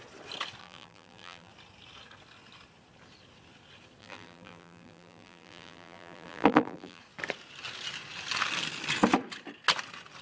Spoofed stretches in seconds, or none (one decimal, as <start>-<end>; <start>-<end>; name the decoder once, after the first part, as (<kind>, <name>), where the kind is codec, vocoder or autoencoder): 0.6-1.5 (vocoder, BigVGAN v2); 4.0-7.0